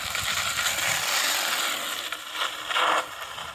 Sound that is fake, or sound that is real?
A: real